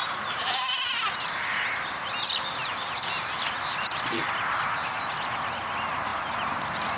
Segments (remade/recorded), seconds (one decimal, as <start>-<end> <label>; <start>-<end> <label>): 0.0-1.1 remade; 1.1-2.6 recorded; 2.6-3.1 remade; 3.1-7.0 recorded